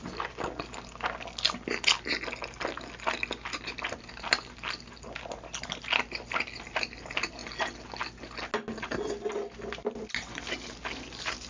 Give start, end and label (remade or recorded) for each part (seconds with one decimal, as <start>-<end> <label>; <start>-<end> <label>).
0.0-11.5 recorded

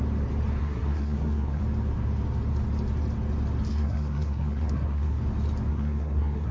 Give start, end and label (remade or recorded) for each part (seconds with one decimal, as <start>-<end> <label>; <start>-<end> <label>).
0.0-0.6 recorded; 0.6-1.6 remade; 1.6-3.7 recorded; 3.7-5.2 remade; 5.2-5.7 recorded; 5.7-6.5 remade